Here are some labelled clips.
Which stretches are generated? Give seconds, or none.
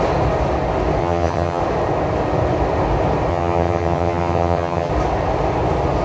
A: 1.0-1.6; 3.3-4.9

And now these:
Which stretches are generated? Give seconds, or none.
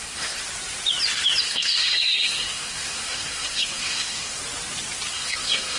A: 0.0-0.4; 1.4-4.4; 5.1-5.8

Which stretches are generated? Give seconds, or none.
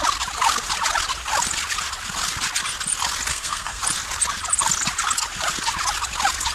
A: 3.3-3.8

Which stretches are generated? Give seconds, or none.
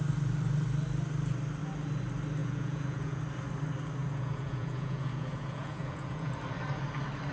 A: 2.4-3.2; 4.0-6.4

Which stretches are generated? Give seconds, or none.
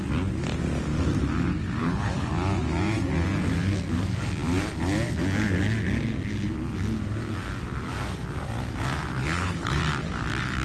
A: 1.8-2.3; 9.2-9.8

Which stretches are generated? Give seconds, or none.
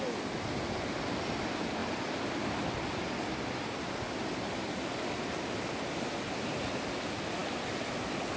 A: none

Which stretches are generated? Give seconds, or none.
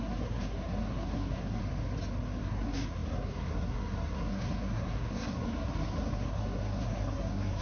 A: 0.0-1.6; 2.4-7.6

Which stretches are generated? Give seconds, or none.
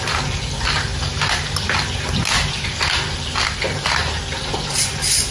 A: none